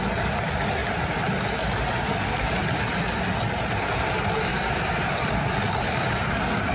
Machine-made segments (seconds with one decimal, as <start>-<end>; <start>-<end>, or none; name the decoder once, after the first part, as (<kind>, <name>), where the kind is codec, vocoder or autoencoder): 4.5-5.3 (vocoder, BigVGAN v2)